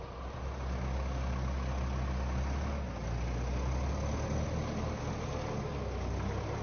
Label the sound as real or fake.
real